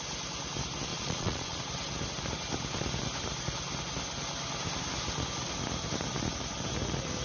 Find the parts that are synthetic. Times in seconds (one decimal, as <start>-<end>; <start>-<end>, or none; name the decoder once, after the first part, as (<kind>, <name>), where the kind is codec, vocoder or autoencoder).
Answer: 0.9-1.6 (vocoder, Vocos)